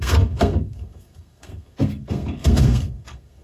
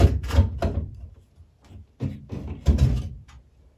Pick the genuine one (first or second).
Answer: second